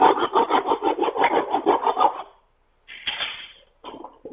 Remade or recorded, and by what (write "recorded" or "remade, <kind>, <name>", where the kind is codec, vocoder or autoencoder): recorded